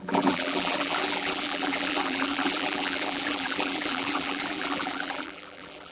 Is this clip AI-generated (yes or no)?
yes